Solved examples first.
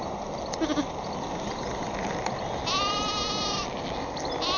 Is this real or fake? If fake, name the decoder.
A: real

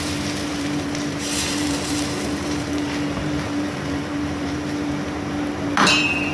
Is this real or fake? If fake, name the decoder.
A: fake, vocoder, BigVGAN v2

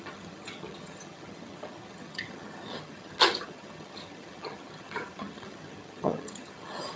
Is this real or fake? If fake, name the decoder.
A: fake, vocoder, HiFi-GAN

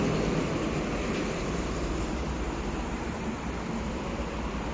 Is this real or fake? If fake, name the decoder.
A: fake, vocoder, BigVGAN v2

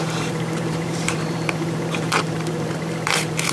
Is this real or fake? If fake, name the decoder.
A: fake, vocoder, BigVGAN v2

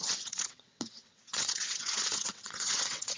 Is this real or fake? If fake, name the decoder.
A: fake, vocoder, WaveNeXt